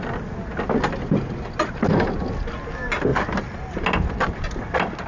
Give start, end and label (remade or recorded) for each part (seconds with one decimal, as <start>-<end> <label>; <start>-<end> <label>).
0.0-5.1 recorded